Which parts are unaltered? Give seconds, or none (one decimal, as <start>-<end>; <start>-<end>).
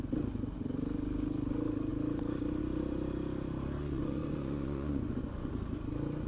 0.0-3.8; 5.5-6.3